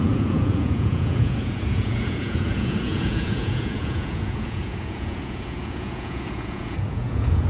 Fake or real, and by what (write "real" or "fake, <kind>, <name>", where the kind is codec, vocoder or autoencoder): fake, vocoder, Vocos